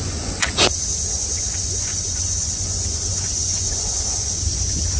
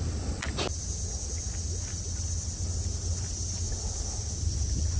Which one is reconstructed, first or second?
first